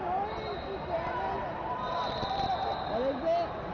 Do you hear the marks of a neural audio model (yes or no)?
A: no